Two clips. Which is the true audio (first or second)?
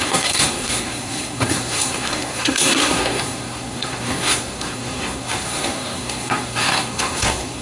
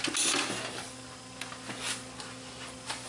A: second